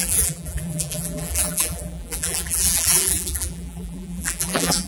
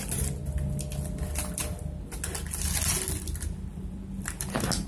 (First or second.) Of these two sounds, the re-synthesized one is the first